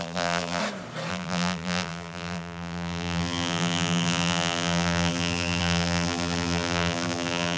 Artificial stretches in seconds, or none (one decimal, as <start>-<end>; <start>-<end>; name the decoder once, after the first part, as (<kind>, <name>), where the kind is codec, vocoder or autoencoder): 0.0-0.6 (vocoder, BigVGAN v2); 1.1-7.6